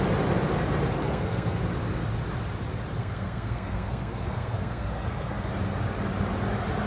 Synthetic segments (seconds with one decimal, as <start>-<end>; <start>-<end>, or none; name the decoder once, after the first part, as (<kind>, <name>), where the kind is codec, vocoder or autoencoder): 1.0-1.6 (codec, SNAC); 3.0-5.5